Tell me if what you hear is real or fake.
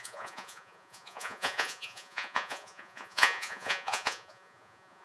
fake